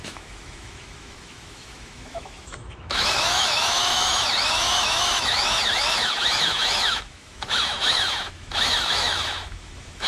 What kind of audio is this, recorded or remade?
remade